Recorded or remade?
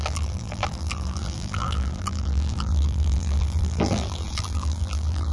remade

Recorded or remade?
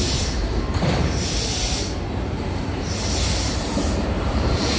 remade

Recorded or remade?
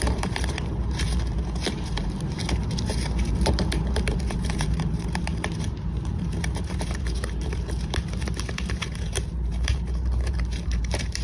remade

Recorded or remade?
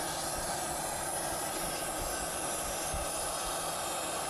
recorded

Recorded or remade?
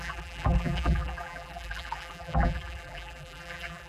remade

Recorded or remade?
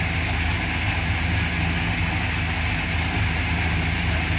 recorded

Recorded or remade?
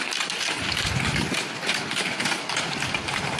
remade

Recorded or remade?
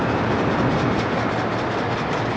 recorded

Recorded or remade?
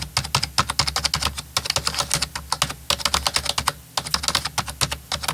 recorded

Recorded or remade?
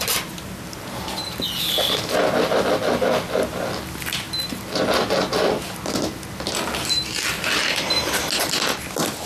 recorded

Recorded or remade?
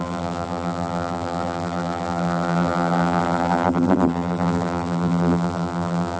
remade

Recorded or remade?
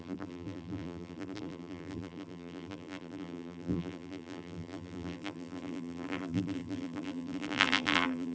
remade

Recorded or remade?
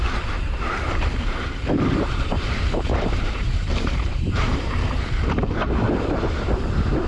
remade